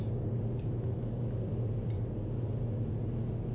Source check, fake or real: real